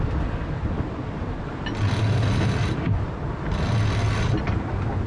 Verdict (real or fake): real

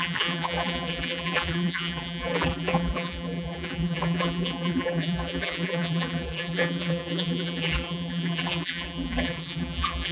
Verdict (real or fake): fake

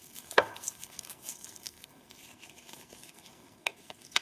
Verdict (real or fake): fake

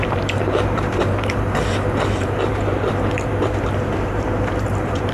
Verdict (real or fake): fake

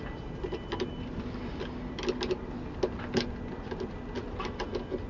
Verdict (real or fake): real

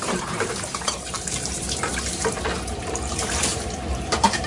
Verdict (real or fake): fake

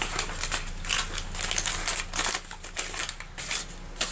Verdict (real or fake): real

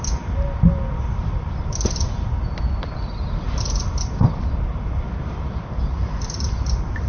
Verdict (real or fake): real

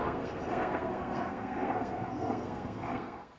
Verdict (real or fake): fake